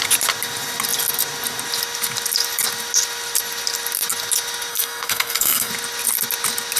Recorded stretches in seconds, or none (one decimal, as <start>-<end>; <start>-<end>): 0.0-4.7; 5.7-6.8